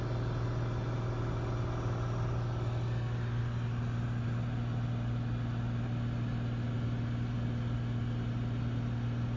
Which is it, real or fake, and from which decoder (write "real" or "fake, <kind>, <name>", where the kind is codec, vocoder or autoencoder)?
real